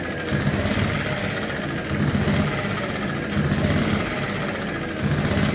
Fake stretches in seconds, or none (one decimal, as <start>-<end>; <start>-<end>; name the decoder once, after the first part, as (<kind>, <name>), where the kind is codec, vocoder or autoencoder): none